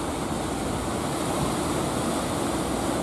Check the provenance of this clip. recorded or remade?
recorded